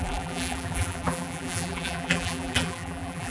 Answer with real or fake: fake